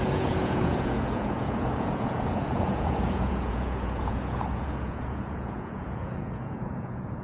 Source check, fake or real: fake